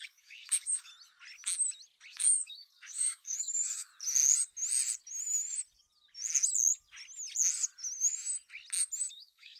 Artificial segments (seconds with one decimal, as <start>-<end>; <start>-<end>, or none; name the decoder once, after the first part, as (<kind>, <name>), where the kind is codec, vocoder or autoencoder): 0.0-0.9 (codec, DAC); 2.1-3.9; 9.1-9.6